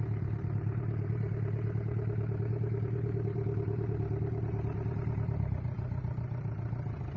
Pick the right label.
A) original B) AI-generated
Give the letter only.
B